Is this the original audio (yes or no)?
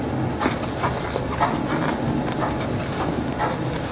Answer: yes